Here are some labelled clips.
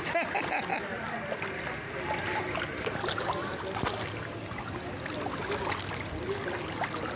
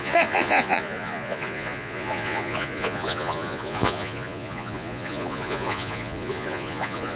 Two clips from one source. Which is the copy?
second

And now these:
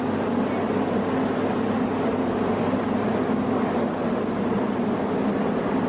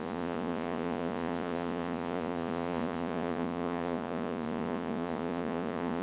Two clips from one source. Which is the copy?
second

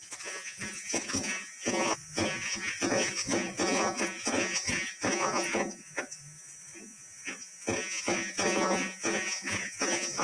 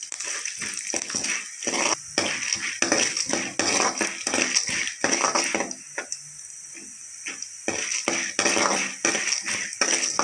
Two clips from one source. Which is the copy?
first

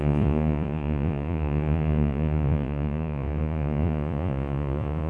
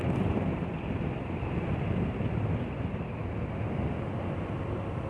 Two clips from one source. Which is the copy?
first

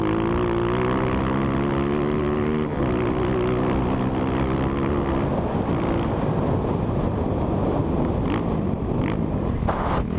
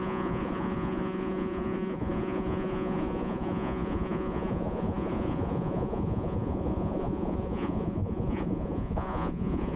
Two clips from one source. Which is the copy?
second